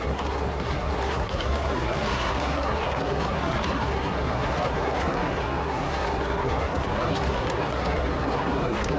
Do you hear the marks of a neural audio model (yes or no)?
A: yes